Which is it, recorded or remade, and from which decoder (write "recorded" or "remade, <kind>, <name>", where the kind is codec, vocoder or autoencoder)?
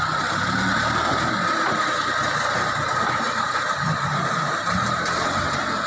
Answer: remade, vocoder, BigVGAN v2